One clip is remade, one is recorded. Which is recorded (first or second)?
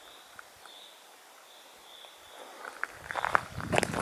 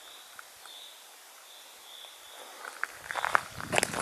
second